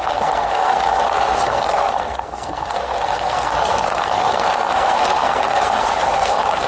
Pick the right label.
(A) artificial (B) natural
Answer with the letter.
A